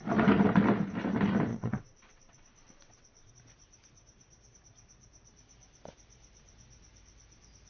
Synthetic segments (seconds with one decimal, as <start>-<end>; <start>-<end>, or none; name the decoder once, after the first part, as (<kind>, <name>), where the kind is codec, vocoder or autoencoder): 1.5-3.3 (vocoder, WaveNeXt)

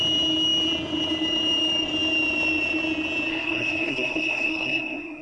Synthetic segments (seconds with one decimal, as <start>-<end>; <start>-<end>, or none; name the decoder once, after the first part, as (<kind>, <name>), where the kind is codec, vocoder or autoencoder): 3.3-5.2 (codec, SNAC)

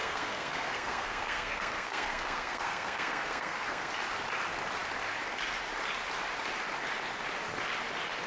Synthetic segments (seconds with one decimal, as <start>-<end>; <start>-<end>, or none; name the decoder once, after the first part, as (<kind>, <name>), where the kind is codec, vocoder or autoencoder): 0.0-3.9 (codec, SNAC)

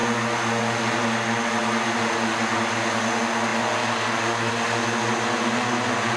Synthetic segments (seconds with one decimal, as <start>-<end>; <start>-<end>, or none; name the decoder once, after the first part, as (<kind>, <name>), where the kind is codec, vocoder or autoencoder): none

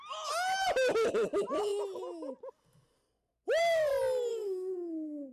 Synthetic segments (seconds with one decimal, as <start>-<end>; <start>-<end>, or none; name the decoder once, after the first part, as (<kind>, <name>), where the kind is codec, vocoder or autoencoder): 4.3-5.3 (codec, SNAC)

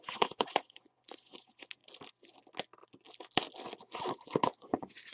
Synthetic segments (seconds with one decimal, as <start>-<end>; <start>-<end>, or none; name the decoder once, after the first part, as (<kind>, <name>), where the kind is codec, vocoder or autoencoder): 0.0-1.8 (vocoder, Vocos); 4.0-5.1

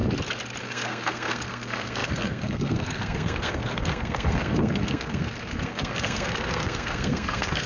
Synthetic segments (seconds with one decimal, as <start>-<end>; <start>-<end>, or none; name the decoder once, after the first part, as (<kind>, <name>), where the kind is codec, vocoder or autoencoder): 0.6-7.7 (codec, SNAC)

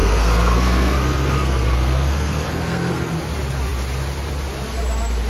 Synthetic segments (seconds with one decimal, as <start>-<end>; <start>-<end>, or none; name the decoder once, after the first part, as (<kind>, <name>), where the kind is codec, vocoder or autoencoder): 0.0-3.1 (codec, SNAC)